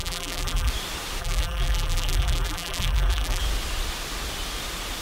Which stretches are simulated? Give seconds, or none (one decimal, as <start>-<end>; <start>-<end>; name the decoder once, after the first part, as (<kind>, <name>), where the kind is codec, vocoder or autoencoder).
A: 0.0-0.7 (vocoder, BigVGAN v2); 1.2-3.4